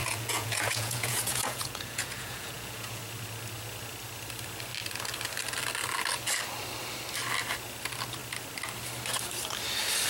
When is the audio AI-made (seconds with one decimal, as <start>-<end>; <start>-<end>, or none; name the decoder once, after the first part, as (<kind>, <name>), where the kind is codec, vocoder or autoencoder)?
0.0-3.0 (vocoder, Vocos)